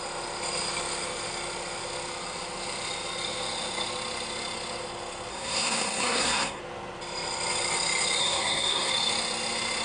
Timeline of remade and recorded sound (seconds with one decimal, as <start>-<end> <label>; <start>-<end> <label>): 0.0-5.3 recorded; 5.3-6.6 remade; 6.6-8.2 recorded; 8.2-8.9 remade; 8.9-9.8 recorded